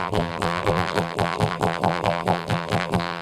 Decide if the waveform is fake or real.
fake